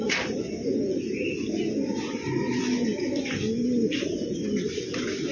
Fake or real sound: real